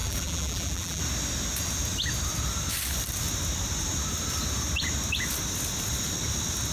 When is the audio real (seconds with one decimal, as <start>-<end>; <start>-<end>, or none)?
1.0-6.7